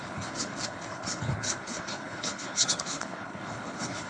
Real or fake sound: fake